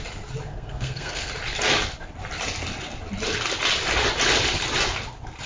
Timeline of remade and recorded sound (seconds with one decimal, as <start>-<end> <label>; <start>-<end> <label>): 0.0-0.5 recorded; 0.5-1.3 remade; 1.3-5.5 recorded